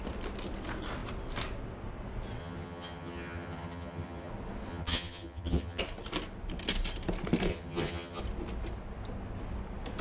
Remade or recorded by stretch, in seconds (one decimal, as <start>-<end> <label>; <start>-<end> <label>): 0.0-2.4 recorded; 2.4-4.3 remade; 4.3-4.7 recorded; 4.7-5.8 remade; 5.8-7.5 recorded; 7.5-8.2 remade; 8.2-10.0 recorded